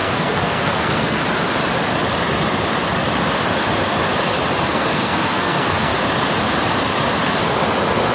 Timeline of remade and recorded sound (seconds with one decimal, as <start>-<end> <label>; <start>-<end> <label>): 0.0-1.2 remade; 1.2-4.7 recorded; 4.7-5.9 remade; 5.9-8.1 recorded